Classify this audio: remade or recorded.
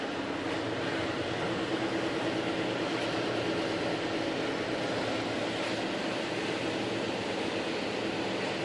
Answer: recorded